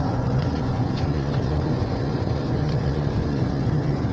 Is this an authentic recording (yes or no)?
no